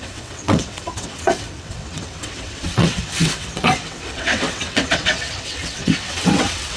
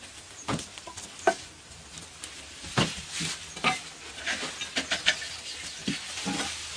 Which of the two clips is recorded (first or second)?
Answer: second